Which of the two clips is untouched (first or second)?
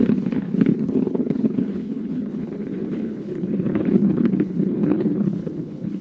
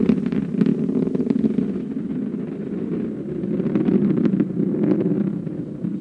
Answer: second